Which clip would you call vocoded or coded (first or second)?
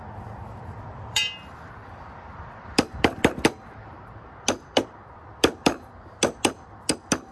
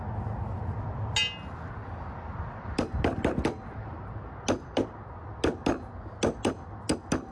first